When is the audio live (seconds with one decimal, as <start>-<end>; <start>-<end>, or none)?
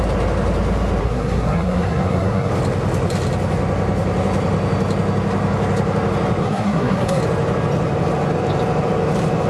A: 0.0-1.0; 2.5-6.4; 7.2-9.5